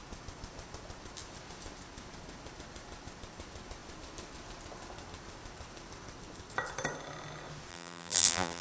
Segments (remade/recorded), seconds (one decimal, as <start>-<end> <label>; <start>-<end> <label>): 0.0-7.7 recorded; 7.7-8.6 remade

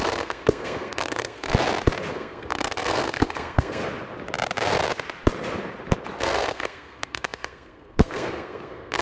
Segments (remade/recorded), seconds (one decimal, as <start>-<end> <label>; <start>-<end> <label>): 0.0-1.5 remade; 1.5-2.1 recorded; 2.1-3.8 remade; 3.8-6.2 recorded; 6.2-9.0 remade

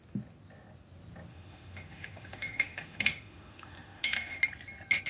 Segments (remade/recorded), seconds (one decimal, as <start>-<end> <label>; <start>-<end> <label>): 0.0-1.3 recorded; 1.3-4.4 remade; 4.4-5.1 recorded

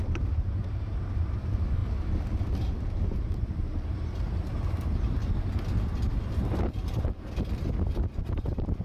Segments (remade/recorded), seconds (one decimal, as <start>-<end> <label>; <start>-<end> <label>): 0.0-1.8 remade; 1.8-2.9 recorded; 2.9-5.2 remade; 5.2-7.9 recorded; 7.9-8.8 remade